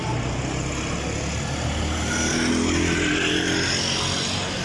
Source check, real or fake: real